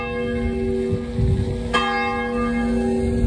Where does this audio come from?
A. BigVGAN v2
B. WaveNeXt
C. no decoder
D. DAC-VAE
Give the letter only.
C